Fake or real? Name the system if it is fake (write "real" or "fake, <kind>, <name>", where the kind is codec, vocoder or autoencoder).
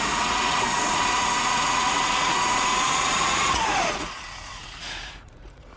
fake, vocoder, Vocos